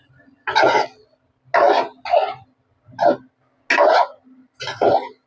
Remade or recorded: recorded